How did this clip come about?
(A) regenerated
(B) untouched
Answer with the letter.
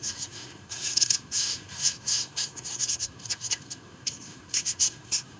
A